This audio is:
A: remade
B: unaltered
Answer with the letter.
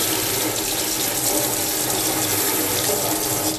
B